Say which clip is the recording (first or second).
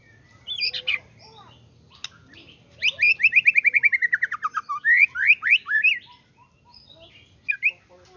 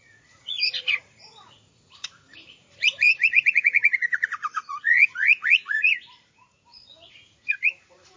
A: first